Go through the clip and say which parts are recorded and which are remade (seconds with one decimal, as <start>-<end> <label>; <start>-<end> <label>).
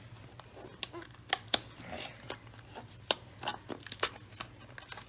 0.0-5.1 recorded